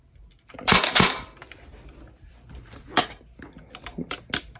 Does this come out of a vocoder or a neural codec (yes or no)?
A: no